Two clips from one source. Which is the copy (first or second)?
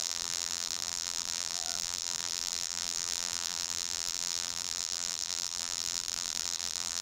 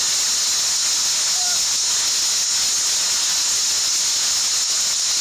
first